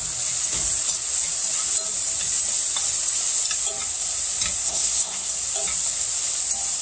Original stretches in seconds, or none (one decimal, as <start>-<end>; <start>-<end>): 0.0-4.6; 5.3-6.8

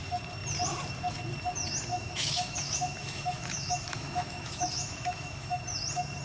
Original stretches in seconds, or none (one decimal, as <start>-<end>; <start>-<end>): 0.0-1.9; 5.6-6.2

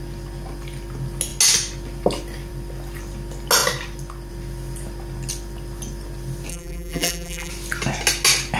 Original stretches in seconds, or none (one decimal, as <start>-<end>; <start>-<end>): 0.0-6.5; 7.5-8.6